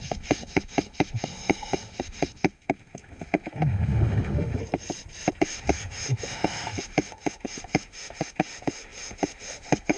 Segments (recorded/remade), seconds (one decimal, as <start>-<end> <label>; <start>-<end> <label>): 0.0-4.6 remade; 4.6-5.4 recorded; 5.4-10.0 remade